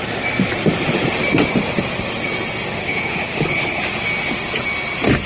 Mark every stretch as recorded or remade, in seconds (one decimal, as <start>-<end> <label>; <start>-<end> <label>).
0.0-2.8 recorded; 2.8-3.8 remade; 3.8-5.3 recorded